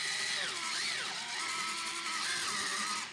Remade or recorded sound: recorded